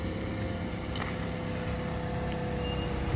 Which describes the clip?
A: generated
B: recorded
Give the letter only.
B